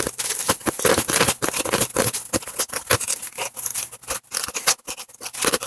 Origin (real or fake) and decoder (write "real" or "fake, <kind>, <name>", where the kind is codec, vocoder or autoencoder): real